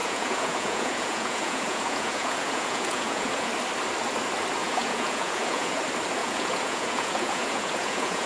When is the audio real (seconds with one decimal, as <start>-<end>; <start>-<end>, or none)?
3.5-4.6; 5.8-6.2